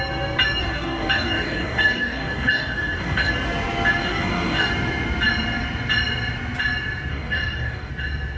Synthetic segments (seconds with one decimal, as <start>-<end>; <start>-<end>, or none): 0.6-3.3; 4.0-4.7; 7.1-7.9